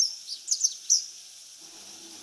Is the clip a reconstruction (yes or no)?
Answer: no